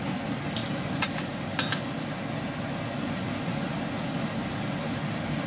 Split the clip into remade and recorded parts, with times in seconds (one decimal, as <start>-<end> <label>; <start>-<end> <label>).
0.0-5.5 recorded